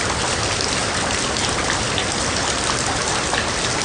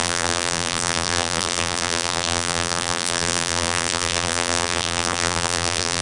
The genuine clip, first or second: first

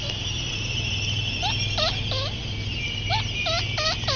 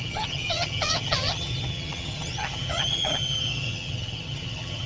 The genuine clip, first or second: first